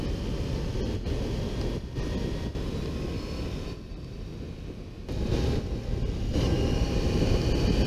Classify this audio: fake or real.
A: real